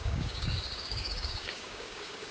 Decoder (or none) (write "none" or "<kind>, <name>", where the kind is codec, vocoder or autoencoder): codec, DAC